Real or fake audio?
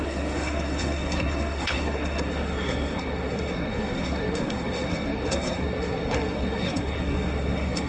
fake